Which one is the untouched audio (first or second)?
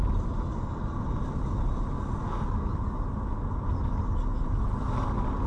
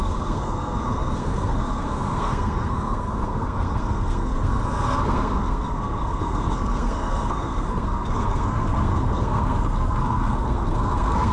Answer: first